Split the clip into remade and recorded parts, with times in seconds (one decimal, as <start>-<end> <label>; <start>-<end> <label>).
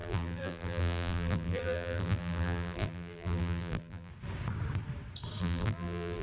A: 0.0-4.1 remade; 4.1-5.4 recorded; 5.4-6.2 remade